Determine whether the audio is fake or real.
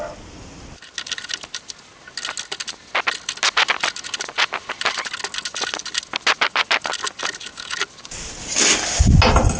real